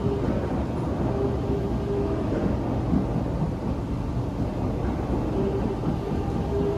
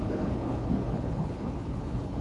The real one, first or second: first